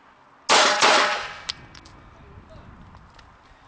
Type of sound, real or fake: real